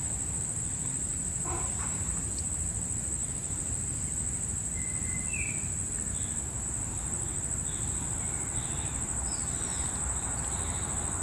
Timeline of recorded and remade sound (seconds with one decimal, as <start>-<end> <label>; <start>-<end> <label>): 0.0-1.1 recorded; 1.1-2.4 remade; 2.4-9.7 recorded; 9.7-10.4 remade; 10.4-11.2 recorded